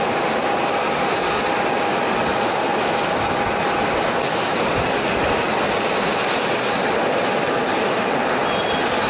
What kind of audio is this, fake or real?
real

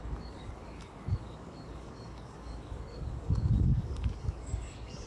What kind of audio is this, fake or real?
fake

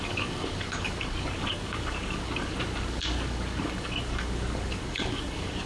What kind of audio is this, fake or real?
fake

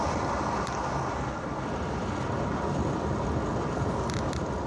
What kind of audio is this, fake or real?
real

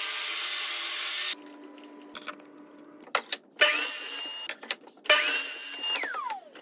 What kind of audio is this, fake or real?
real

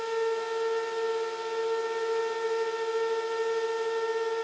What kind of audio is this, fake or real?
real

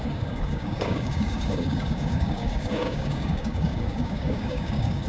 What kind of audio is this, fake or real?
fake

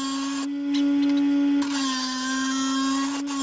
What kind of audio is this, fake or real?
real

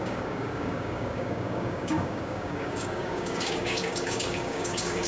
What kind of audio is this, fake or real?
fake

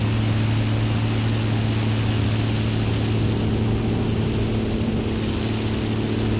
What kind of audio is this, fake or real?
real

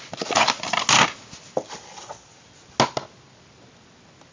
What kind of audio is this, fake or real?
real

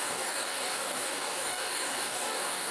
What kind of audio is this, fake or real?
fake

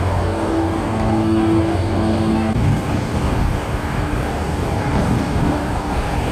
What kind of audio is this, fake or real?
fake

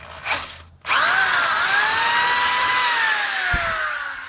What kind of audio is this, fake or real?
real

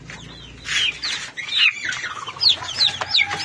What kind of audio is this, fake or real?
real